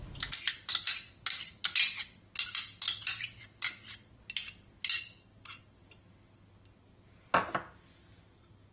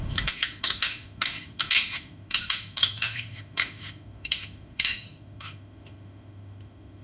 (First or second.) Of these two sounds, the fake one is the second